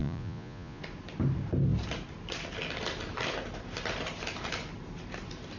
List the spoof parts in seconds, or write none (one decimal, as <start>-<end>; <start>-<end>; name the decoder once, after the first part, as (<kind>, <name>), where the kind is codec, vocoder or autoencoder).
0.0-0.8 (vocoder, Vocos)